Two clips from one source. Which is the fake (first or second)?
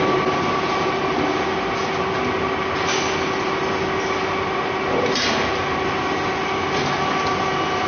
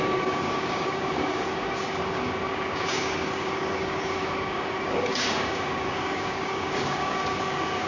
second